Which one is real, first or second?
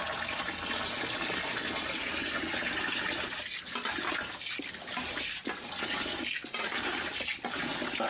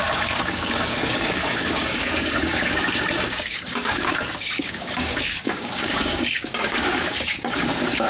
first